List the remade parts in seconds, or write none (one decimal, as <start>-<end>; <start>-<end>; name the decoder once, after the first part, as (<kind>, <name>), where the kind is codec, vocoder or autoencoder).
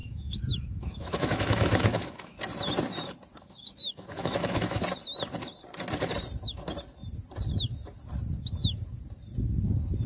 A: 0.0-2.4 (autoencoder, DAC-VAE); 3.3-4.8